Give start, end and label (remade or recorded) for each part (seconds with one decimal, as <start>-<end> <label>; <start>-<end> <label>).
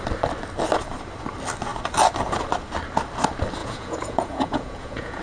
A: 0.0-3.6 recorded; 3.6-5.2 remade